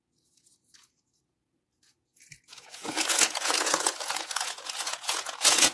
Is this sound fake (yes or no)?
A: yes